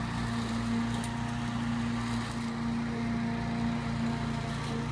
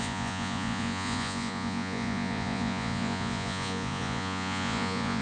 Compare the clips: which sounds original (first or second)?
first